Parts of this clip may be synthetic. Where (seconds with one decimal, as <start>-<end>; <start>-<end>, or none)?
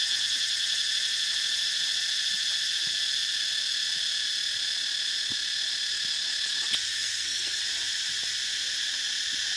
6.9-7.6